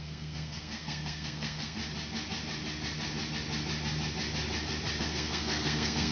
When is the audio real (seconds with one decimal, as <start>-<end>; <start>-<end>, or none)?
1.8-5.0